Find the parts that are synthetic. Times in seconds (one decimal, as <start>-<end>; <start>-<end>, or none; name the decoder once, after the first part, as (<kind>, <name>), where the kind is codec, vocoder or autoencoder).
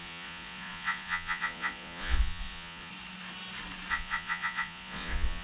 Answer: 0.0-2.9 (vocoder, Vocos); 3.9-5.4